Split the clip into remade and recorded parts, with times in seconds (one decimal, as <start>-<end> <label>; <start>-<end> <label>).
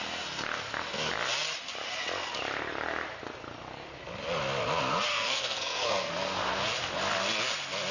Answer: 0.0-5.1 recorded; 5.1-6.1 remade; 6.1-7.9 recorded